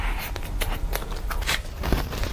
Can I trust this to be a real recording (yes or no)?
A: yes